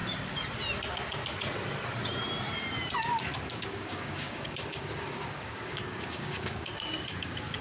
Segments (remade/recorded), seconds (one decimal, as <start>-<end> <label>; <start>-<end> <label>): 0.0-3.6 recorded; 3.6-7.6 remade